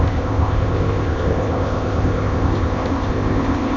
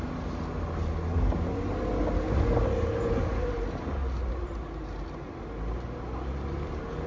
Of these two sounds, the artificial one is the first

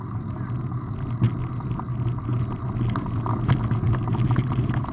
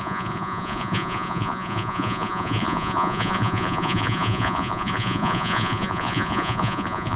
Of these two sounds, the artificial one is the second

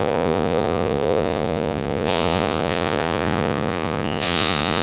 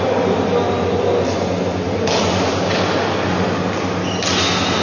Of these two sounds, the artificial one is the first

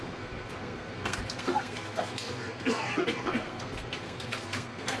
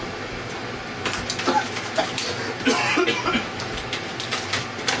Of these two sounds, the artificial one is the first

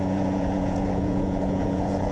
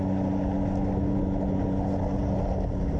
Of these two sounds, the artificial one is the first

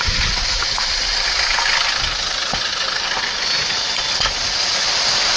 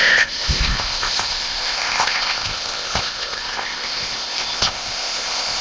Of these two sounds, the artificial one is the second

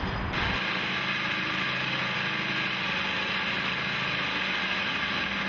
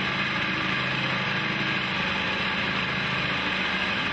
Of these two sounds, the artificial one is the second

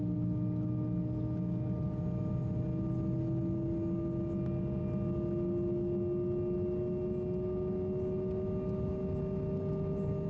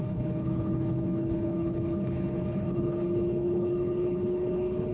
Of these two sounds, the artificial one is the second